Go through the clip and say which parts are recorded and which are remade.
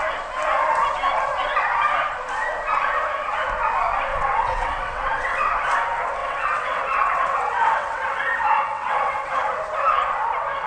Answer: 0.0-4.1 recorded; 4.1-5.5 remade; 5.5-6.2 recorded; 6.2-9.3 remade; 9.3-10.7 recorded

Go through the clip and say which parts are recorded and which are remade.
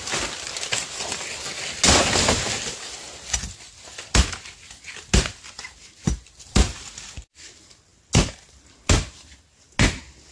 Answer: 0.0-10.3 recorded